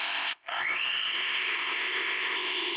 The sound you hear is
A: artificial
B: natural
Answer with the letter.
A